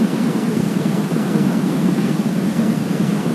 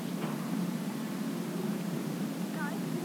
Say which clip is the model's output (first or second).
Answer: first